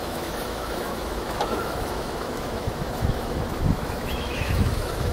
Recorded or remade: remade